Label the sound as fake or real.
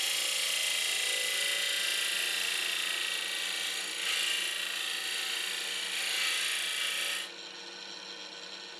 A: real